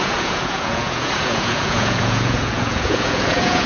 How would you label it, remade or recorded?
remade